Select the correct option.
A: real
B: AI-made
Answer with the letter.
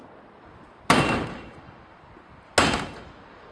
A